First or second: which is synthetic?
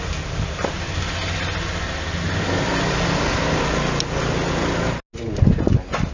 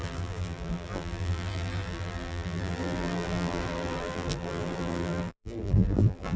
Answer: second